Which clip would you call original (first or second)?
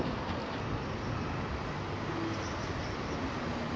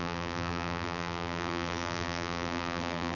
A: first